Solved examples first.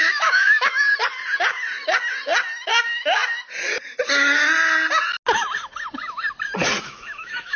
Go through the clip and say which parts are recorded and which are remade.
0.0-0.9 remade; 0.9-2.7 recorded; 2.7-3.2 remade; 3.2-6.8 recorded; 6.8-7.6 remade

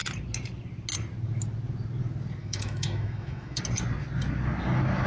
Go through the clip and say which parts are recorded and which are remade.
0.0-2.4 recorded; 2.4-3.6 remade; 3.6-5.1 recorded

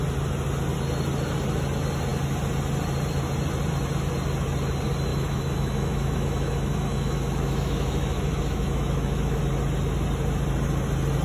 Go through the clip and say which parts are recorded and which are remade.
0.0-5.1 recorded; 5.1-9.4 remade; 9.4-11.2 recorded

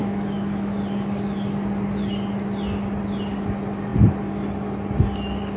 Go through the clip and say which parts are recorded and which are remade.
0.0-0.8 remade; 0.8-5.6 recorded

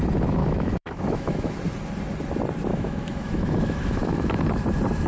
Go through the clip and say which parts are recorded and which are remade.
0.0-0.4 recorded; 0.4-1.5 remade; 1.5-2.7 recorded; 2.7-4.4 remade; 4.4-5.1 recorded

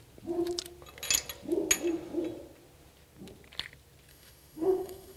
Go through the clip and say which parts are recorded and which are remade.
0.0-4.1 recorded; 4.1-5.2 remade

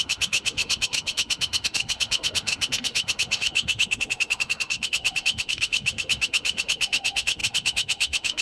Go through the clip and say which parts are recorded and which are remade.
0.0-8.4 remade